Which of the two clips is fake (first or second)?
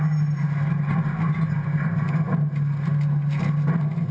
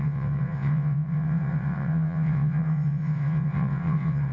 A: second